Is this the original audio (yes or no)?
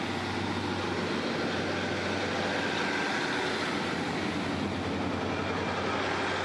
yes